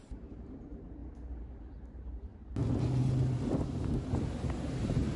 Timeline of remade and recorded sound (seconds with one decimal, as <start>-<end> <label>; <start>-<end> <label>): 0.0-1.0 remade; 1.0-1.7 recorded; 1.7-2.3 remade; 2.3-4.0 recorded; 4.0-5.2 remade